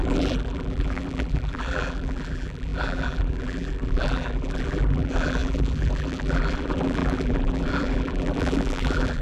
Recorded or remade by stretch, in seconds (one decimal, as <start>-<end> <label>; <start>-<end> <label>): 0.0-9.2 remade